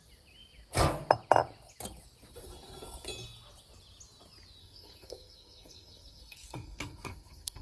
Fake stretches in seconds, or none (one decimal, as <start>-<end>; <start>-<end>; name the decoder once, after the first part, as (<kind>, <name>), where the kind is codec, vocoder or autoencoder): 4.6-7.6 (codec, SNAC)